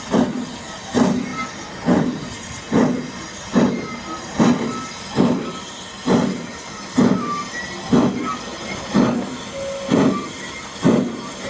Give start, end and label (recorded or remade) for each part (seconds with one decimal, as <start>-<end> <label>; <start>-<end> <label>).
0.0-11.5 recorded